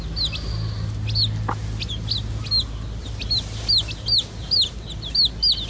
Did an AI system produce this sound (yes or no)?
no